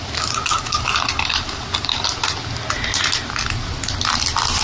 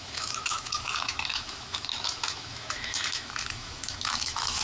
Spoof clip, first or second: second